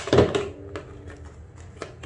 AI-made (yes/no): no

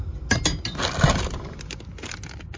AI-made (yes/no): no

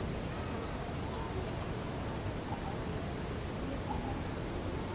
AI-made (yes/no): no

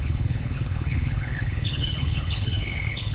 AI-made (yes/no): yes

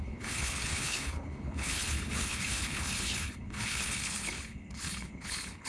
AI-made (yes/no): yes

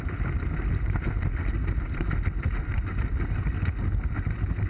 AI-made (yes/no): no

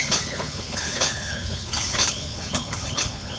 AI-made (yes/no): yes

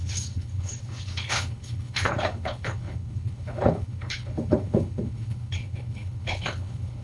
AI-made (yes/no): yes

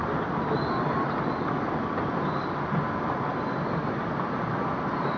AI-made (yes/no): no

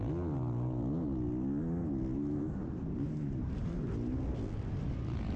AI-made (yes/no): no